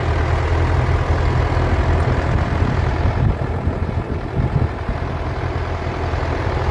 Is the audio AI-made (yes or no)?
no